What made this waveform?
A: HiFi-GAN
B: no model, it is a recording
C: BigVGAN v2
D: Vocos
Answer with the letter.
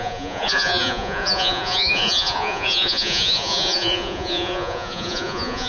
D